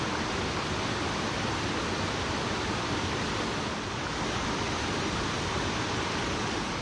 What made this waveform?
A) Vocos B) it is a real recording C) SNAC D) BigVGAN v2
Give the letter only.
B